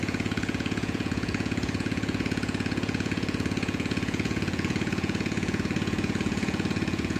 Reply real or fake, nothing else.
fake